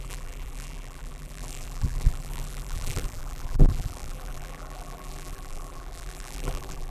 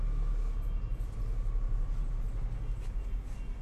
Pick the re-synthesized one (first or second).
first